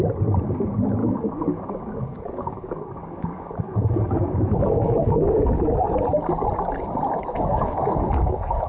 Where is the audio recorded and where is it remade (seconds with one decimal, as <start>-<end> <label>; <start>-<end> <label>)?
0.0-1.0 recorded; 1.0-5.5 remade; 5.5-7.2 recorded; 7.2-8.7 remade